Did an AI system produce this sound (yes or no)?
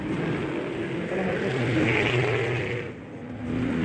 no